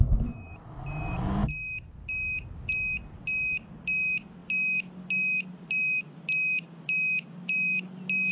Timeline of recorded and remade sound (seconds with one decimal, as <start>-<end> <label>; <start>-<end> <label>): 0.0-8.3 recorded